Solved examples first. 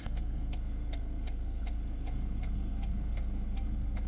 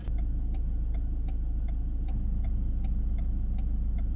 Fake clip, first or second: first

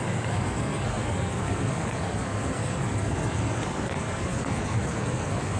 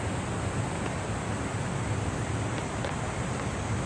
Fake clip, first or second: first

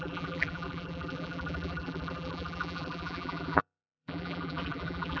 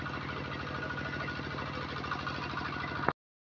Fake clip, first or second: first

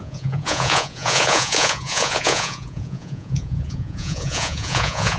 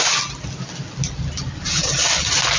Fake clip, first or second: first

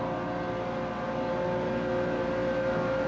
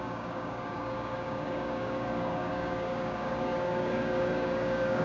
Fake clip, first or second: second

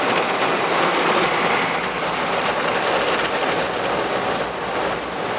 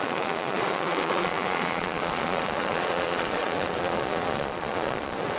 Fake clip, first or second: second